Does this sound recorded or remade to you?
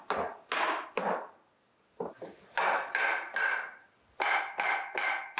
recorded